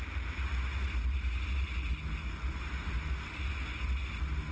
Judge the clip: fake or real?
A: real